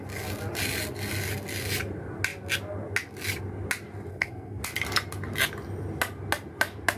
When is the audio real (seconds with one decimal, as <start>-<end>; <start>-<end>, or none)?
0.0-4.1; 4.6-7.0